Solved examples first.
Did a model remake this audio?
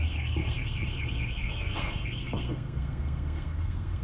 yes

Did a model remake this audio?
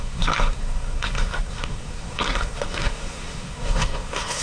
yes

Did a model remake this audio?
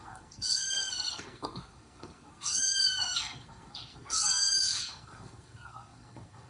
yes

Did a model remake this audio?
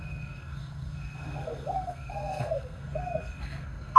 yes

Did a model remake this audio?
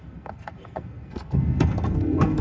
yes